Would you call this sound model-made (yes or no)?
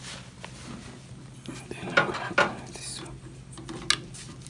no